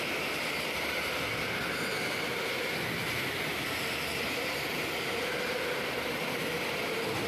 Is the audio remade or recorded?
recorded